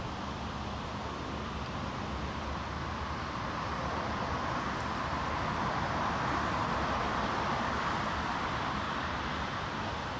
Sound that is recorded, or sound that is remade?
recorded